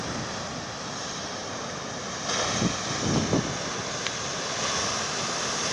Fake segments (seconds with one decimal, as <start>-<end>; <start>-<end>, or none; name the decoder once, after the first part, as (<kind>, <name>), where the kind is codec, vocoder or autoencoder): none